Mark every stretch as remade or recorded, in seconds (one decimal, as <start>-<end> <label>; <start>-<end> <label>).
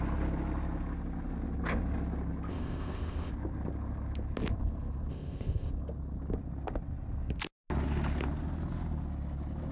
0.0-2.5 recorded; 2.5-3.3 remade; 3.3-5.1 recorded; 5.1-5.7 remade; 5.7-9.7 recorded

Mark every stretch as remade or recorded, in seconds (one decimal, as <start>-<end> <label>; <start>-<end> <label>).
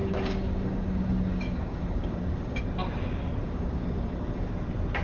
0.0-2.6 remade; 2.6-3.4 recorded; 3.4-4.5 remade; 4.5-5.0 recorded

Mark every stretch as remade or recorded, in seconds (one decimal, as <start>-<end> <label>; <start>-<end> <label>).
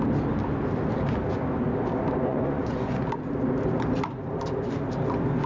0.0-2.3 recorded; 2.3-3.0 remade; 3.0-5.5 recorded